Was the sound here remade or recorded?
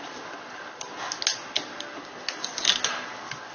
recorded